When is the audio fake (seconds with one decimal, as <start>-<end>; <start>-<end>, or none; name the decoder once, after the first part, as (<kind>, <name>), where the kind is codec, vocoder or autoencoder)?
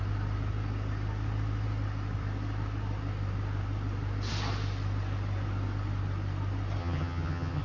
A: 6.8-7.6 (vocoder, HiFi-GAN)